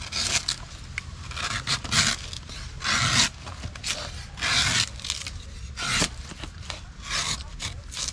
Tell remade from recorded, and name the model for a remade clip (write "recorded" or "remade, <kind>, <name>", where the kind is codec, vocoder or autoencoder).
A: recorded